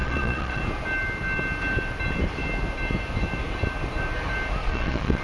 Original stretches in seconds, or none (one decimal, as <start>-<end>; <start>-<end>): 0.6-4.6